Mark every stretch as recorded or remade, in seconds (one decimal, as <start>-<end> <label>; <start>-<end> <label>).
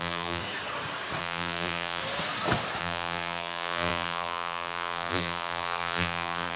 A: 0.0-0.4 remade; 0.4-1.2 recorded; 1.2-2.0 remade; 2.0-2.8 recorded; 2.8-6.6 remade